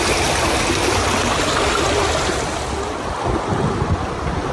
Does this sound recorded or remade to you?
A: recorded